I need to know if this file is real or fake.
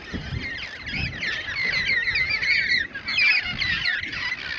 real